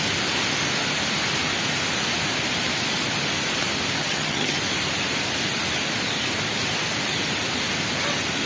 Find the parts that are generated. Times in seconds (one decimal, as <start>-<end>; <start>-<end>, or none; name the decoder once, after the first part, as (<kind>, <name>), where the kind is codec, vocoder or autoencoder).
4.0-4.6 (vocoder, HiFi-GAN)